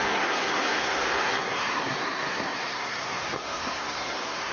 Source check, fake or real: fake